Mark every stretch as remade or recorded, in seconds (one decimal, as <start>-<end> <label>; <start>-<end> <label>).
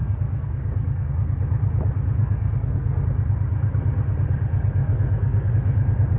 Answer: 0.0-1.1 remade; 1.1-2.2 recorded; 2.2-3.0 remade; 3.0-4.8 recorded; 4.8-5.5 remade; 5.5-6.2 recorded